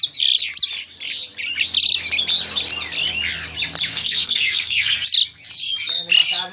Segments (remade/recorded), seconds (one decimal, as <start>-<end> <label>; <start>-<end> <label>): 0.0-3.9 recorded; 3.9-4.9 remade; 4.9-6.5 recorded